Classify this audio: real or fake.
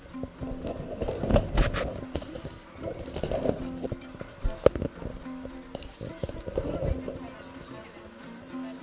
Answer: real